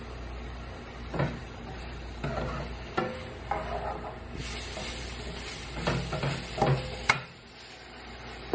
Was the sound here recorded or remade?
recorded